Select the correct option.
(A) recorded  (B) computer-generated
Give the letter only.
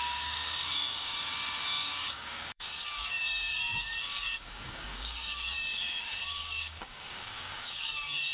B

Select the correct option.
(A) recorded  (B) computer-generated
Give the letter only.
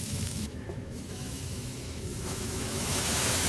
B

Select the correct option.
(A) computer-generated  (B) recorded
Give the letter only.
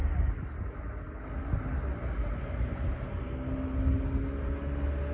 B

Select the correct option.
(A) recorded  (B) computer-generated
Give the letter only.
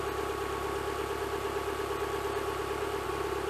A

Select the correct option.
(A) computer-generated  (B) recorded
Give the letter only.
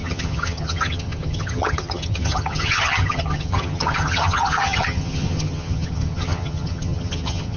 A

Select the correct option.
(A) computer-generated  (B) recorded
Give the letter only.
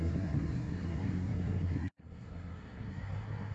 A